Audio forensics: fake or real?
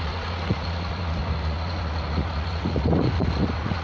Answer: fake